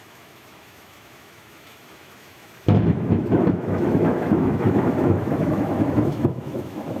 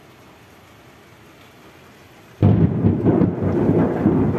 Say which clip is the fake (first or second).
first